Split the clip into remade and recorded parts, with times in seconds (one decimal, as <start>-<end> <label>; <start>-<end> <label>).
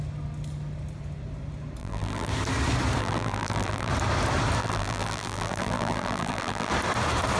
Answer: 0.0-1.8 recorded; 1.8-2.3 remade; 2.3-3.0 recorded; 3.0-3.9 remade; 3.9-4.6 recorded; 4.6-6.7 remade; 6.7-7.4 recorded